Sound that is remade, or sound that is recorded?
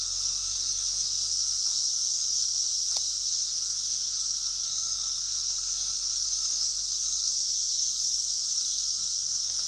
remade